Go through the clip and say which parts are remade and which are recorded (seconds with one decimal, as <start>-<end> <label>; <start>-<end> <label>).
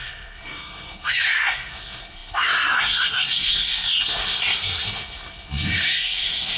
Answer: 0.0-6.6 remade